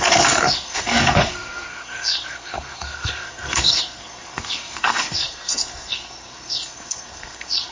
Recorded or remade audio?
remade